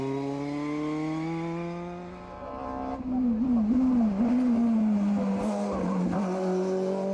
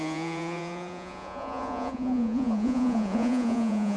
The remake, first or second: second